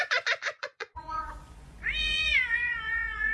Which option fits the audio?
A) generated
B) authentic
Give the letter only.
A